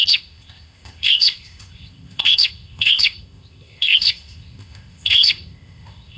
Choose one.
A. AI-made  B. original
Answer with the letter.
A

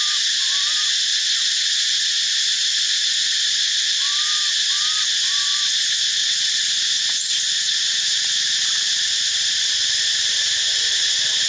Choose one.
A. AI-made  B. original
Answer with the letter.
B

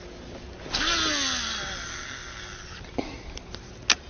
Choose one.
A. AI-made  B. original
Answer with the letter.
B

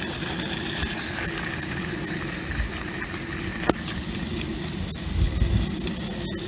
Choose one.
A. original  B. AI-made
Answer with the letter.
A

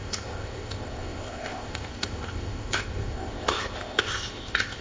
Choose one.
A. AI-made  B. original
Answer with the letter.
A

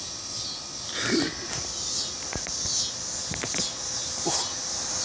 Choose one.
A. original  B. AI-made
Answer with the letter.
A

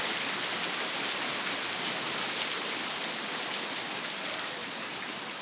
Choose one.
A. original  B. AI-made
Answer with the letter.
A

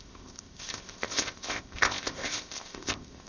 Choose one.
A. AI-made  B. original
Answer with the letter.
A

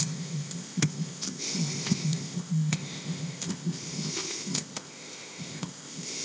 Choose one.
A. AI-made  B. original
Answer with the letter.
A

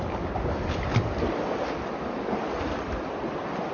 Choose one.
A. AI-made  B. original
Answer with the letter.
B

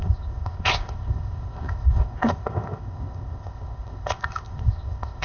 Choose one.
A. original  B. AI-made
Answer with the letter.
B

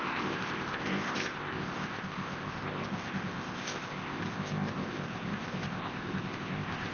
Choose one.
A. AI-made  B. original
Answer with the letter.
A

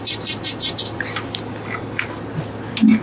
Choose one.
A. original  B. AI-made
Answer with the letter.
A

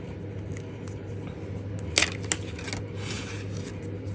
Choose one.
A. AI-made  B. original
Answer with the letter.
B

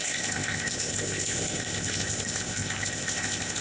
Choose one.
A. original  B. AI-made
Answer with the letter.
B